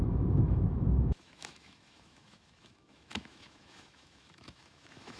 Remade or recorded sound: remade